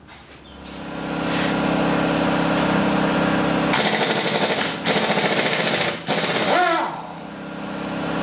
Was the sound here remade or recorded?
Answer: recorded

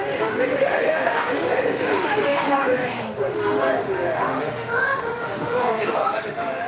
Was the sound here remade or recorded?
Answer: remade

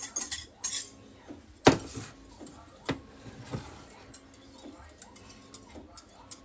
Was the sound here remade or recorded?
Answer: recorded